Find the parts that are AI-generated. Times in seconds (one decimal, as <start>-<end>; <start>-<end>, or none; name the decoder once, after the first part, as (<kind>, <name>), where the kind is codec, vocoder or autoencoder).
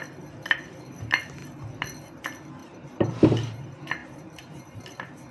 2.6-3.6 (vocoder, BigVGAN v2); 4.0-5.3